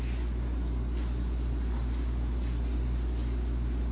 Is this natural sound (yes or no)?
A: yes